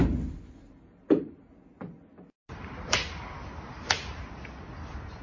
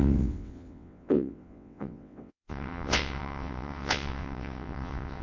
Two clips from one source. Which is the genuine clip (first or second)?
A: first